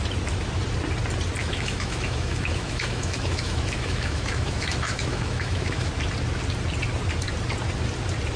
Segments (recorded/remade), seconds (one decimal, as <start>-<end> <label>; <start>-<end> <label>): 0.0-1.4 recorded; 1.4-5.9 remade; 5.9-8.4 recorded